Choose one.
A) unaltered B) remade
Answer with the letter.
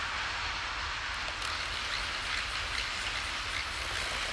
A